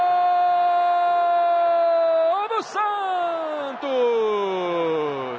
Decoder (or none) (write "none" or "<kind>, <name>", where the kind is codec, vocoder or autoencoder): none